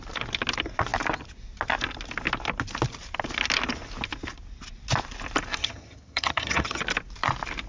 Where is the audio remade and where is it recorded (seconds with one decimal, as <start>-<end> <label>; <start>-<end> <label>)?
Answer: 0.0-5.6 recorded; 5.6-6.8 remade; 6.8-7.7 recorded

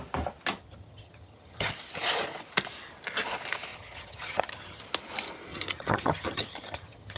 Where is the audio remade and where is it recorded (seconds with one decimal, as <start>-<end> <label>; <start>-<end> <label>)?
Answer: 0.0-0.6 recorded; 0.6-1.7 remade; 1.7-3.7 recorded; 3.7-4.8 remade; 4.8-5.5 recorded; 5.5-7.2 remade